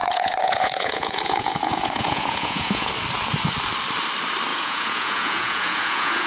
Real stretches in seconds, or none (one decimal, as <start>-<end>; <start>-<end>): 2.9-4.5

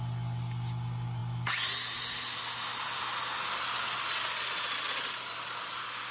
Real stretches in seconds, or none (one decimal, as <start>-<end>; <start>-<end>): 0.0-6.1

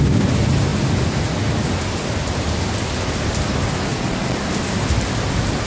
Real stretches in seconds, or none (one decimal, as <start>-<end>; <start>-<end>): 0.0-3.9; 4.4-5.7

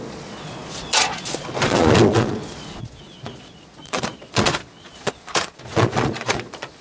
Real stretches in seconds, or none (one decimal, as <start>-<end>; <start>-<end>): none